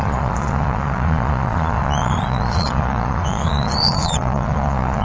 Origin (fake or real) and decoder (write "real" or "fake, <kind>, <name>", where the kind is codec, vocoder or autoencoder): fake, vocoder, Vocos